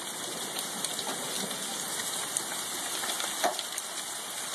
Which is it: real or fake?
real